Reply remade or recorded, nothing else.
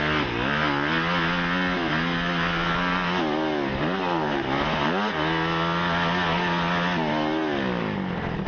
recorded